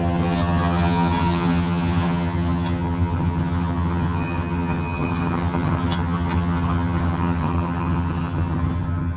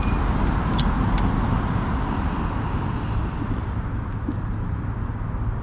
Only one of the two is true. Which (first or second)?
second